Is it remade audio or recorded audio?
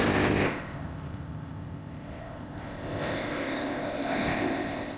remade